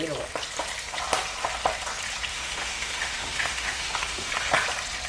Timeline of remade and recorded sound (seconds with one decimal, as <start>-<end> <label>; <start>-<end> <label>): 0.0-2.3 recorded; 2.3-4.3 remade; 4.3-5.1 recorded